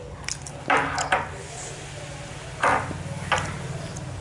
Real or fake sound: real